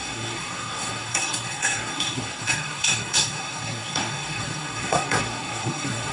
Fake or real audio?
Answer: fake